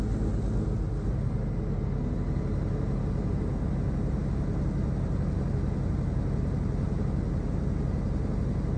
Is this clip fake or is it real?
real